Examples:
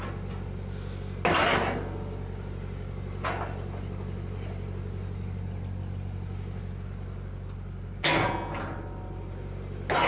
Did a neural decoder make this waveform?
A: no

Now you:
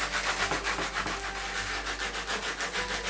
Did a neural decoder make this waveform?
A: no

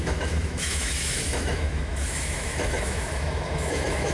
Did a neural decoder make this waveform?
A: yes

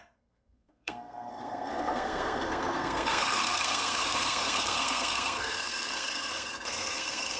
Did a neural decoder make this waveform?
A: yes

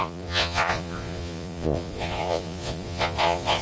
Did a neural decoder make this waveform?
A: yes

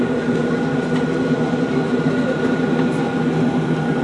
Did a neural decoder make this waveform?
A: no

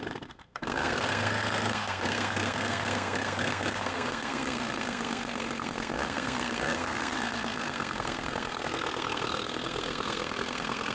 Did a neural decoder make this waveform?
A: yes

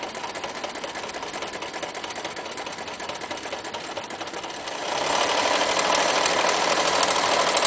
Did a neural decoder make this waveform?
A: no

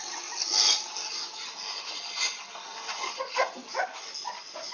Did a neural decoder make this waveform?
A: no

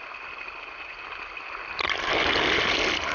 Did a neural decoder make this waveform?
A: no